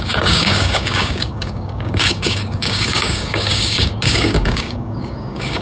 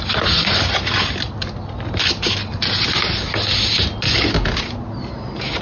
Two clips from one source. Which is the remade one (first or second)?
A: first